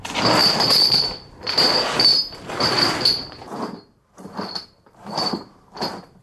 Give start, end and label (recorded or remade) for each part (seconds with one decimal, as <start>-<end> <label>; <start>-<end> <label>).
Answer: 0.0-0.4 recorded; 0.4-1.3 remade; 1.3-2.1 recorded; 2.1-5.8 remade; 5.8-6.2 recorded